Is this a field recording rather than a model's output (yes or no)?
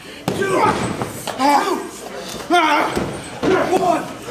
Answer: yes